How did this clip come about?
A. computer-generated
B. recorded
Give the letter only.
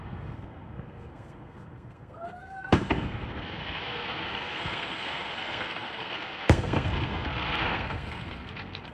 A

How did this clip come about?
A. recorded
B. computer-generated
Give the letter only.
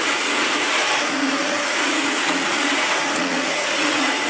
B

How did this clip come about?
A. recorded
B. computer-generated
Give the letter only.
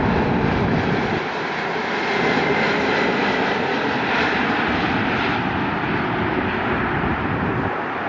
B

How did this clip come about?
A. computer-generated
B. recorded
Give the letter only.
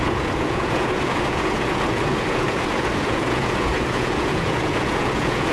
A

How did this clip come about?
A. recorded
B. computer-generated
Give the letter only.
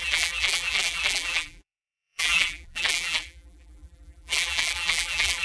B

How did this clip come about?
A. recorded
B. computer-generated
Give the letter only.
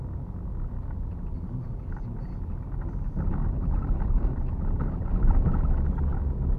A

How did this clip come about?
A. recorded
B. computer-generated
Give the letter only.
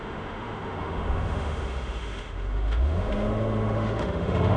B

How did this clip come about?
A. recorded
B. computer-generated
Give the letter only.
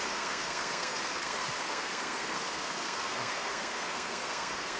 B